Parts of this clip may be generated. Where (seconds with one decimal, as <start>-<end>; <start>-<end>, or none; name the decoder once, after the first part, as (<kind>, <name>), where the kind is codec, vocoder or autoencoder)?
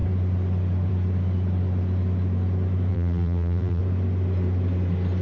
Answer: 2.9-3.8 (vocoder, BigVGAN v2)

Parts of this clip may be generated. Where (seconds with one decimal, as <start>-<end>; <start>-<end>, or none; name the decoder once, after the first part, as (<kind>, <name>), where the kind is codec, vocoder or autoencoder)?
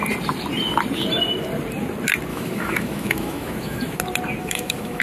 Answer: 2.3-4.0 (autoencoder, DAC-VAE); 4.4-5.0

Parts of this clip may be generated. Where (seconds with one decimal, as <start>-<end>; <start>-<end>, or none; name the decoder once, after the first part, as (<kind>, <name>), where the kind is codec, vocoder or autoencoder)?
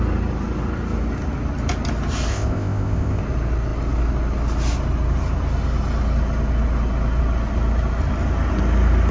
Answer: 2.3-3.2 (codec, ZipCodec)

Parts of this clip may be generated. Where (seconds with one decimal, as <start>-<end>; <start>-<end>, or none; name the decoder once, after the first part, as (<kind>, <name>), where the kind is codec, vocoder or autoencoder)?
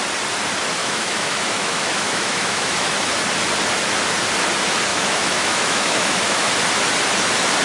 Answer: 0.8-2.9 (autoencoder, DAC-VAE); 4.9-6.5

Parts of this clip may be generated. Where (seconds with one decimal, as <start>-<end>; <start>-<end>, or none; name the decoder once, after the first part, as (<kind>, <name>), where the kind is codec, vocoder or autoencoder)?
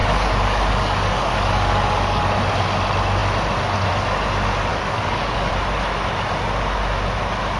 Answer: 0.0-2.2 (codec, DAC); 4.7-5.5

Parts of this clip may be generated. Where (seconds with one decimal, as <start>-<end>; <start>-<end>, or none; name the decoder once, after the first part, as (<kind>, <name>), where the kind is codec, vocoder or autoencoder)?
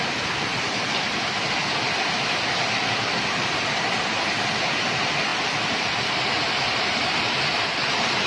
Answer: none